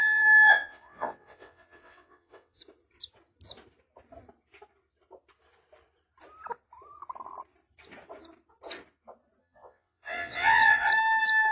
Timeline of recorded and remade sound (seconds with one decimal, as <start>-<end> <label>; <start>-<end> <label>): 0.0-2.6 remade; 2.6-9.4 recorded; 9.4-10.9 remade; 10.9-11.5 recorded